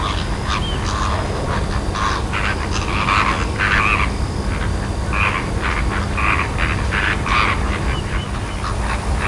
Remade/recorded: recorded